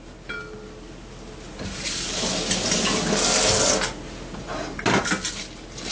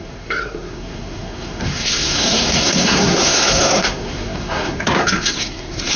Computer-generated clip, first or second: second